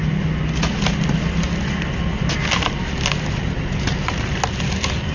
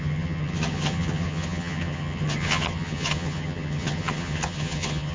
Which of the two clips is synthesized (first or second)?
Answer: second